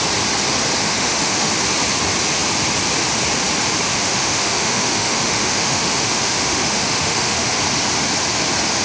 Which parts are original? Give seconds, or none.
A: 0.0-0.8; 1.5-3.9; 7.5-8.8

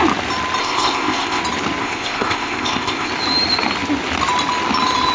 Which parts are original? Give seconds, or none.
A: 0.0-0.6; 1.4-1.8; 3.1-5.1

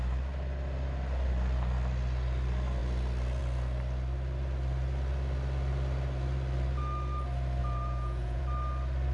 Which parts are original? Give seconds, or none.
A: 0.0-7.6; 8.4-9.1

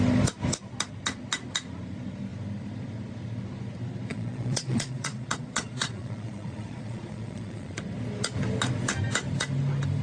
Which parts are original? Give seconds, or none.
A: 0.0-4.1; 7.8-10.0

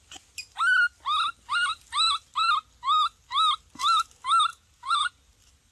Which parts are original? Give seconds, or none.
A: 0.0-4.5; 5.2-5.7

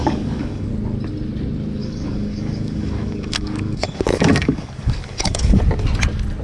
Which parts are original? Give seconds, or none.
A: 0.7-1.8; 5.6-6.4

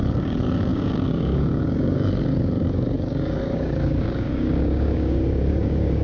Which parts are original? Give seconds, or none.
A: none